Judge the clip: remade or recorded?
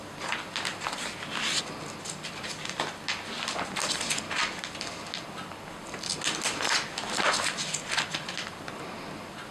recorded